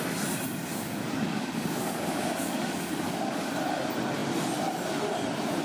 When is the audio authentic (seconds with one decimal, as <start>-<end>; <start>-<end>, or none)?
0.0-0.7; 3.5-5.6

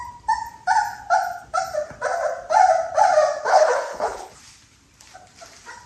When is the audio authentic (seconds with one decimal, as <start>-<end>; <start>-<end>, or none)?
0.0-3.5; 4.3-5.9

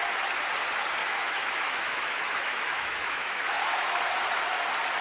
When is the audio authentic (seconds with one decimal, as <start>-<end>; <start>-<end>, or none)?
0.0-1.0; 4.0-5.0

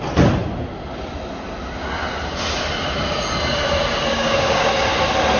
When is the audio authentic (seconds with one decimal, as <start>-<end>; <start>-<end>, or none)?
0.0-4.1; 4.7-5.4

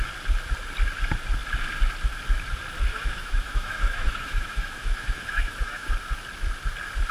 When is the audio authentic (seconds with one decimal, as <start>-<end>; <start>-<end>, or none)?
0.0-2.9; 5.9-7.1

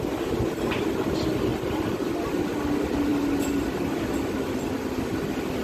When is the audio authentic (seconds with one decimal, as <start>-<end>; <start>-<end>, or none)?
0.0-5.6

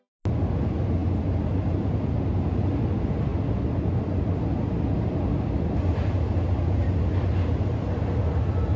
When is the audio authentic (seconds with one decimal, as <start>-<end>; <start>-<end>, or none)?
0.0-8.8

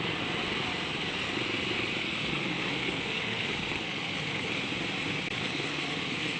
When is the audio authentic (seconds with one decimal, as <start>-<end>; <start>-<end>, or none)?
0.0-2.0; 4.6-5.4